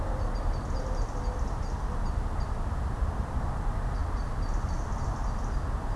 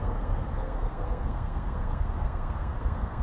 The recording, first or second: first